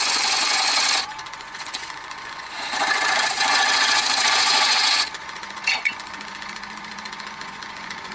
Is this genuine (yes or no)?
no